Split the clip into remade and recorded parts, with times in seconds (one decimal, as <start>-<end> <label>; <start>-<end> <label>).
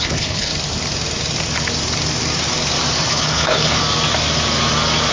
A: 0.0-0.5 remade; 0.5-3.1 recorded; 3.1-3.8 remade; 3.8-5.1 recorded